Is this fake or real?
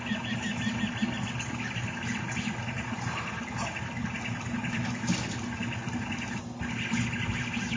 real